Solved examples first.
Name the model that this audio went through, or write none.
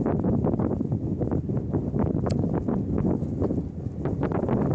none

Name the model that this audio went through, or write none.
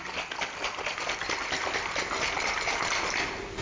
none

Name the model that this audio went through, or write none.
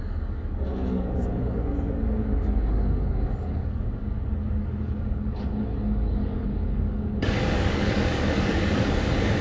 codec, DAC